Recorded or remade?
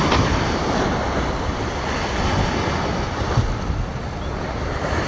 recorded